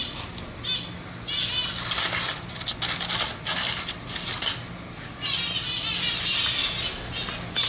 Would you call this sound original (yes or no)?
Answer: yes